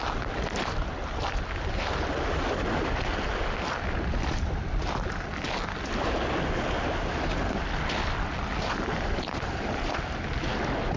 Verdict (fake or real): real